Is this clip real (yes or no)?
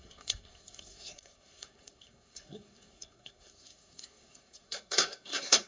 no